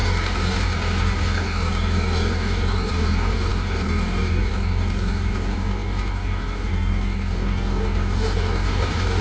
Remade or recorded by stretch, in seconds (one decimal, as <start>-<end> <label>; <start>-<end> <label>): 0.0-9.2 remade